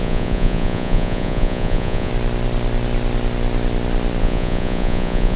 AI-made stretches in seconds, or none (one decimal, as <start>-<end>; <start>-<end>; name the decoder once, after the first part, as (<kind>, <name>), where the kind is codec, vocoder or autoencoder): 0.0-2.1 (vocoder, Vocos); 4.2-5.4